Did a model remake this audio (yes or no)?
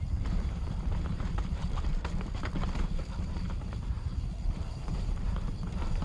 yes